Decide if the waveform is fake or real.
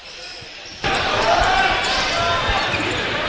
real